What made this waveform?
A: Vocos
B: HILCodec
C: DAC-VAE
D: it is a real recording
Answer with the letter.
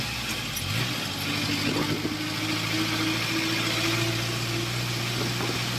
D